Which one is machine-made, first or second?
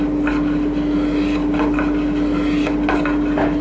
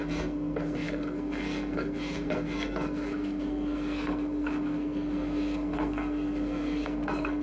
second